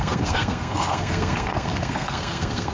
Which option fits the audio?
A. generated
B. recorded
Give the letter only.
A